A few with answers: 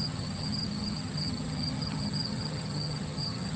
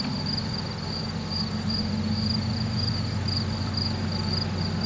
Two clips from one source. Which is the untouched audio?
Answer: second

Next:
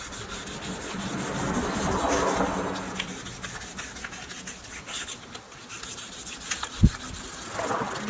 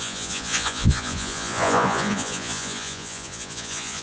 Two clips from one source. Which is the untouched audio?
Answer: first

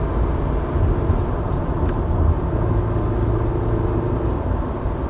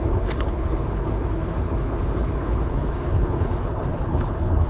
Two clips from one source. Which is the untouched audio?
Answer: first